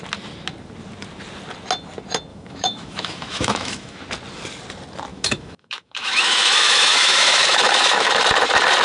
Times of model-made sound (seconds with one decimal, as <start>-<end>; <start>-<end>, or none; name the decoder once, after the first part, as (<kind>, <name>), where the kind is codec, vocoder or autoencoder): 2.3-4.0 (autoencoder, DAC-VAE); 5.1-8.1